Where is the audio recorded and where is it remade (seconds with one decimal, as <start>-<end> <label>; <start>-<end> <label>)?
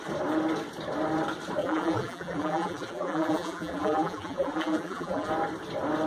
0.0-1.6 recorded; 1.6-5.3 remade; 5.3-6.1 recorded